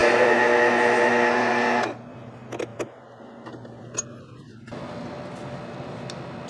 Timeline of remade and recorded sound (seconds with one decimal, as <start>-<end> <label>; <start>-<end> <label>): 0.0-6.5 recorded

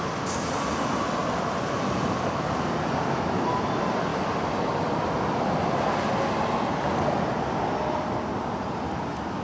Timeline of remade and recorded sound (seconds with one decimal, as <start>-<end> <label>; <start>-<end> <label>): 0.0-9.4 recorded